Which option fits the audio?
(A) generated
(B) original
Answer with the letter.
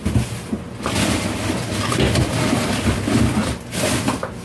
B